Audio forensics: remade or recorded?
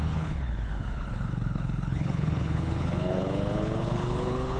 remade